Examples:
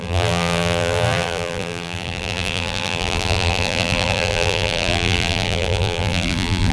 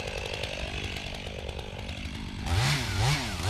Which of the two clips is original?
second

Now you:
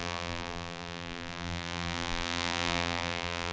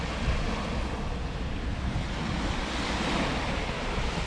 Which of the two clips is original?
second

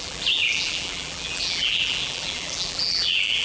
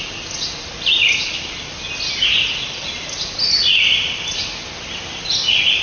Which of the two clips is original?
second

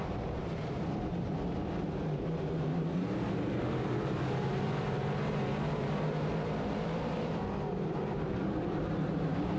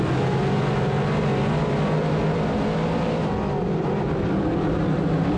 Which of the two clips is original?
second